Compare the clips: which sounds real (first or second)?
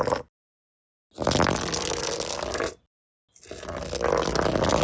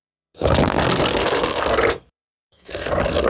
first